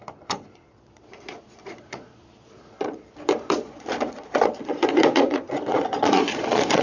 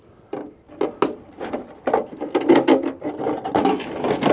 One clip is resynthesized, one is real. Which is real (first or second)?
second